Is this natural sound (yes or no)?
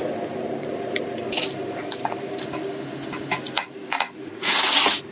yes